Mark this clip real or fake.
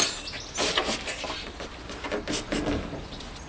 real